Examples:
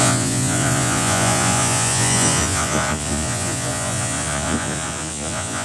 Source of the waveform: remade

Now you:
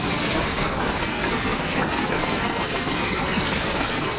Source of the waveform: remade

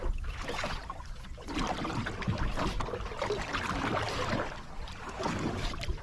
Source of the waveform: recorded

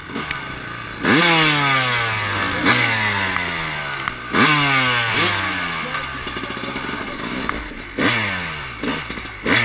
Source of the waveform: recorded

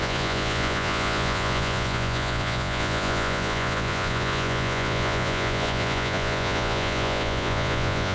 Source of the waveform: remade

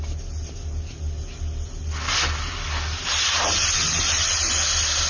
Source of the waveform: recorded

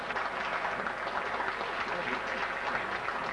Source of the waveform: recorded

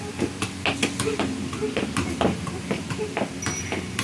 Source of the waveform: recorded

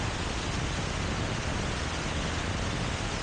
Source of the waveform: recorded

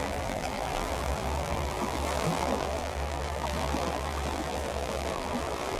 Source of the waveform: remade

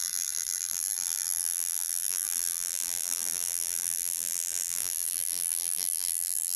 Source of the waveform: remade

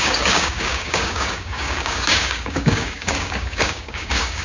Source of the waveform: remade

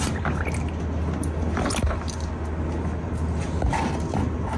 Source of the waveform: recorded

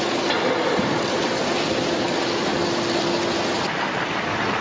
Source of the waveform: recorded